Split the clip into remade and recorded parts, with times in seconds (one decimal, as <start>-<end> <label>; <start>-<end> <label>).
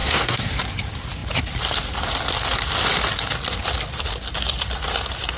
0.0-0.5 remade; 0.5-5.4 recorded